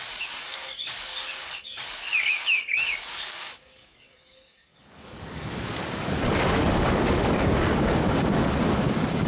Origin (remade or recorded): remade